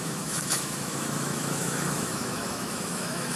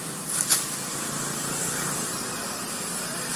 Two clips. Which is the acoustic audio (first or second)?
second